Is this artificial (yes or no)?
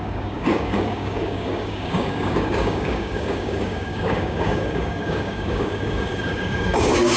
yes